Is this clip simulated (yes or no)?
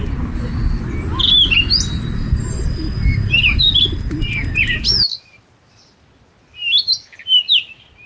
no